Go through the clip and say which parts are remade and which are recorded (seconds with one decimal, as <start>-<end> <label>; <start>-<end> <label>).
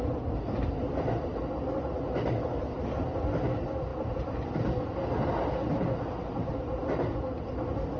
0.0-8.0 recorded